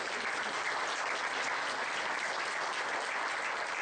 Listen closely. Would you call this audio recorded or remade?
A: recorded